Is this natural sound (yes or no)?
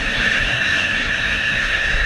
no